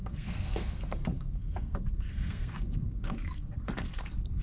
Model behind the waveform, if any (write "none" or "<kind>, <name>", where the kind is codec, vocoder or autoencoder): codec, SNAC